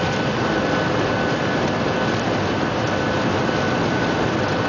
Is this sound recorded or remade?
recorded